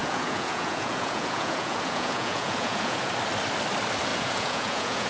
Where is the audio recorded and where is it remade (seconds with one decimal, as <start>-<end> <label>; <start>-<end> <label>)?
0.0-3.1 remade; 3.1-4.1 recorded; 4.1-5.1 remade